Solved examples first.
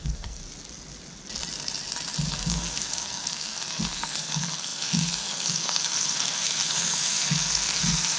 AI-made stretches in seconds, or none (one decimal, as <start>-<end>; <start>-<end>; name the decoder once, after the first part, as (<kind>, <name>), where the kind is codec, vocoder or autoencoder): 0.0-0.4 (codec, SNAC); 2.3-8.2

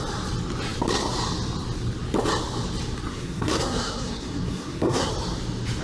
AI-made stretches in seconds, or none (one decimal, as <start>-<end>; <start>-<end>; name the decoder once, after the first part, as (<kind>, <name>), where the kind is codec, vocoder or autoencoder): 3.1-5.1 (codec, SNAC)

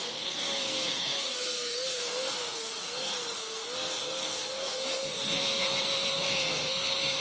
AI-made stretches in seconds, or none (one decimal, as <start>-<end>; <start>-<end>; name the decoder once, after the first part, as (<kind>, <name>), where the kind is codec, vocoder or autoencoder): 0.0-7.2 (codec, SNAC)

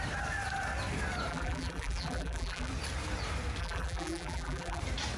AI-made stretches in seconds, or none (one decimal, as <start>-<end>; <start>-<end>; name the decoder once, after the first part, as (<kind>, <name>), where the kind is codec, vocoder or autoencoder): 1.3-2.7 (vocoder, BigVGAN v2); 3.6-4.8

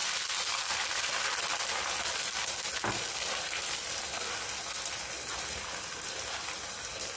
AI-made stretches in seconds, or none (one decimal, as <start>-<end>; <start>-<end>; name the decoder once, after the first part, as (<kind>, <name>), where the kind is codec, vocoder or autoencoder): none

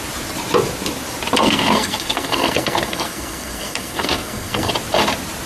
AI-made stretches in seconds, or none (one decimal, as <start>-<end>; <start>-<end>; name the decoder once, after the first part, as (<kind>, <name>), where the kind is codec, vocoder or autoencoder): 1.4-4.7 (codec, SNAC)

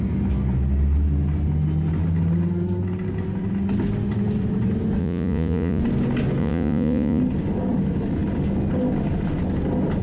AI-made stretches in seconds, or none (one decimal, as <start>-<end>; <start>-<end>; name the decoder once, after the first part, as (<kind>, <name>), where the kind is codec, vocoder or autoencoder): 5.0-5.8 (vocoder, Vocos); 6.4-7.2